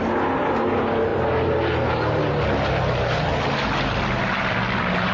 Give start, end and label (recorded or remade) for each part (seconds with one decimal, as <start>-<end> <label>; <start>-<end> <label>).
0.0-5.1 recorded